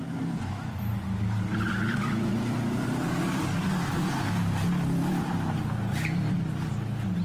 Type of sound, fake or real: real